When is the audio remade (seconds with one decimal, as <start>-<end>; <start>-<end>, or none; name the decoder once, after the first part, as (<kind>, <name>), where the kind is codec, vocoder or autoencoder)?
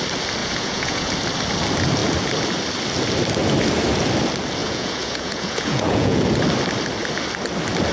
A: 0.4-1.1 (vocoder, Vocos); 4.6-6.2